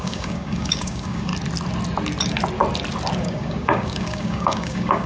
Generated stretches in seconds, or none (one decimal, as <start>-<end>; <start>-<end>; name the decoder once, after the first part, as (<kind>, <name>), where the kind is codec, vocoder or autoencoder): 0.0-1.3 (codec, DAC); 3.2-5.1